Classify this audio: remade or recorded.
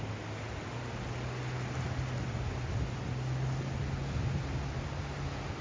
recorded